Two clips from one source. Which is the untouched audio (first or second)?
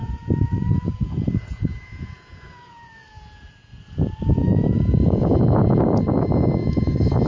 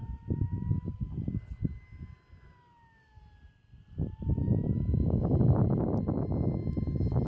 second